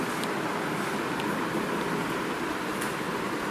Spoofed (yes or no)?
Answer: no